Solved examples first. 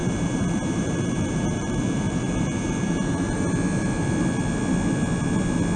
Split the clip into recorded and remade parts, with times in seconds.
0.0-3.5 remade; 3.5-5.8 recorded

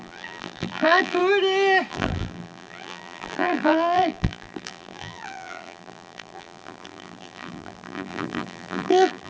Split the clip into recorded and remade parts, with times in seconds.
0.0-1.2 remade; 1.2-1.9 recorded; 1.9-9.3 remade